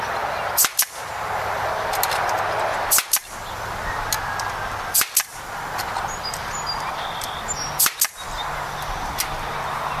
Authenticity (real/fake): real